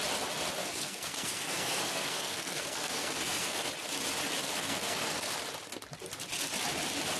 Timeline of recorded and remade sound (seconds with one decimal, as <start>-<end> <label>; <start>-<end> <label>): 0.0-0.6 recorded; 0.6-3.7 remade; 3.7-4.4 recorded; 4.4-5.3 remade; 5.3-7.2 recorded